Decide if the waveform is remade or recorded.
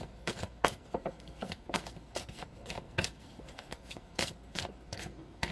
remade